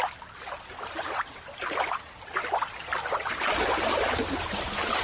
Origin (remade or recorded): recorded